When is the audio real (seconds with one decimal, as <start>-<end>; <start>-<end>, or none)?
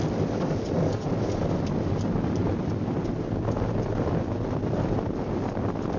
0.0-6.0